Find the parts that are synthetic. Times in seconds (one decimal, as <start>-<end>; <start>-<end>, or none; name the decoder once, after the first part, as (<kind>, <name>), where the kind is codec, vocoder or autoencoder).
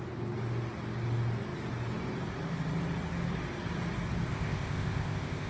4.3-5.5 (codec, ZipCodec)